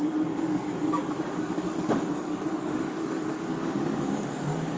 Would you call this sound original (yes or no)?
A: no